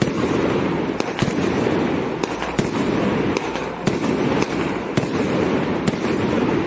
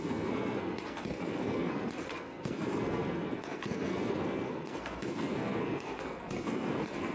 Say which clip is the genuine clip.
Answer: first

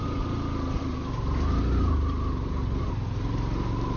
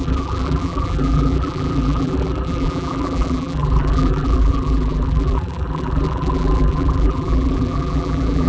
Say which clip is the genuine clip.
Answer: first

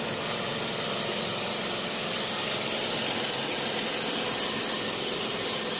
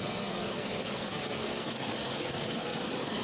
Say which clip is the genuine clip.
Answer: first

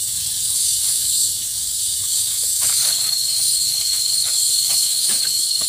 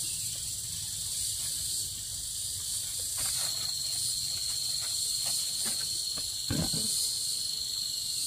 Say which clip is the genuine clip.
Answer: second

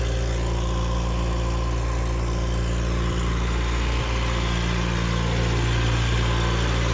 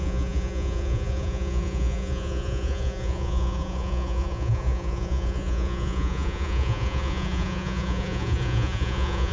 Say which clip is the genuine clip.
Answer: first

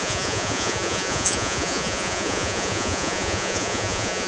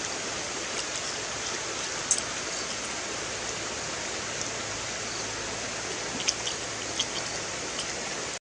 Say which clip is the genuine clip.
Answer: second